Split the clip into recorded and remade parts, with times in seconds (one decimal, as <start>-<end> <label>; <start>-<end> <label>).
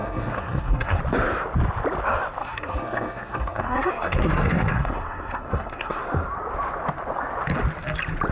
0.0-1.0 remade; 1.0-2.4 recorded; 2.4-6.0 remade; 6.0-8.3 recorded